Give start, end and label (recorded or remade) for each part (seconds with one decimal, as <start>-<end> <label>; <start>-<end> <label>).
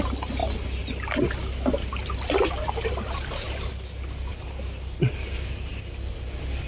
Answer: 0.0-6.7 recorded